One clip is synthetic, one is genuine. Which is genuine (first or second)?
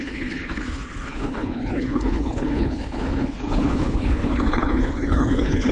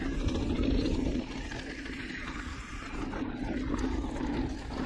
second